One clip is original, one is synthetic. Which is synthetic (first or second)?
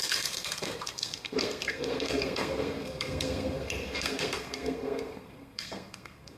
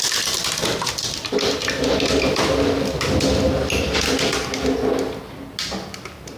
first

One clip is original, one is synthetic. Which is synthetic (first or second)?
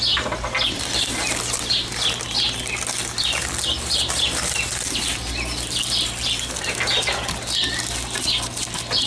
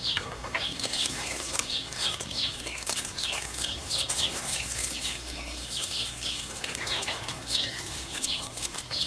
second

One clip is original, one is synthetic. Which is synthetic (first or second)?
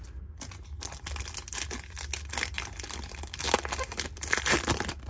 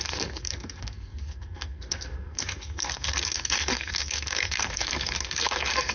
second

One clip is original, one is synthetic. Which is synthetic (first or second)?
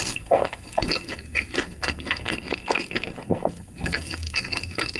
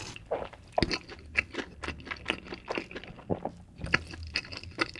first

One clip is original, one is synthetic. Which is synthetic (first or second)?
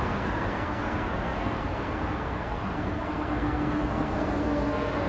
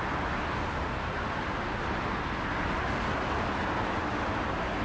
first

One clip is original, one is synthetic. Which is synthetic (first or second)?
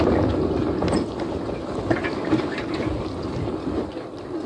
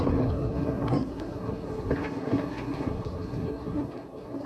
second